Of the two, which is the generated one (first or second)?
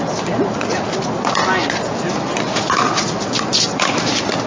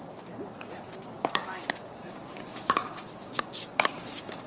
second